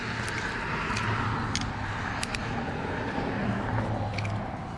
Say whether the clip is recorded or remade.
recorded